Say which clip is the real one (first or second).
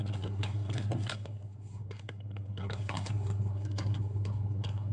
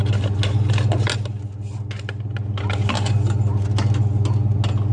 second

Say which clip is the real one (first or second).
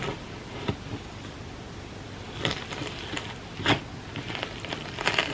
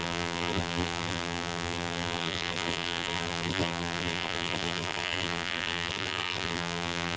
first